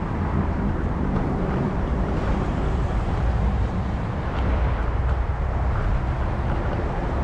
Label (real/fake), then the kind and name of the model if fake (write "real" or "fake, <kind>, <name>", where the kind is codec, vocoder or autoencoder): fake, vocoder, BigVGAN v2